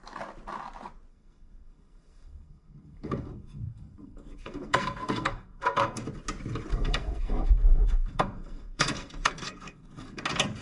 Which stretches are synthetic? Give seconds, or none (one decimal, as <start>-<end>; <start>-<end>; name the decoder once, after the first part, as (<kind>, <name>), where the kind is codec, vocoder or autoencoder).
1.1-6.0 (codec, SNAC); 6.7-10.2